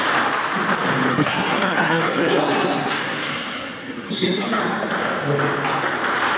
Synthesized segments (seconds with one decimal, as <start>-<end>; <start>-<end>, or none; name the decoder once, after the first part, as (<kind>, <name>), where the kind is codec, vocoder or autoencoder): 1.1-4.6 (codec, SNAC)